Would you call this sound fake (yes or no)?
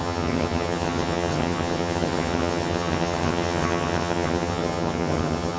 yes